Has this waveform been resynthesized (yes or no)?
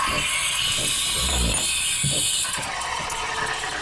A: no